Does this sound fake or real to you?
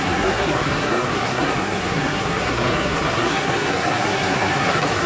fake